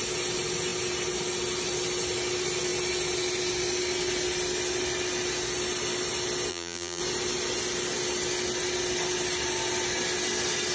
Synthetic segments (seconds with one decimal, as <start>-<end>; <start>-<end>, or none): 6.5-7.0